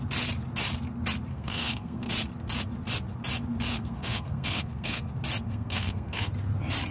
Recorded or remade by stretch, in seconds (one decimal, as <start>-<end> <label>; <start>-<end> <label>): 0.0-1.3 recorded; 1.3-2.1 remade; 2.1-3.7 recorded; 3.7-5.1 remade; 5.1-5.5 recorded; 5.5-6.3 remade; 6.3-6.9 recorded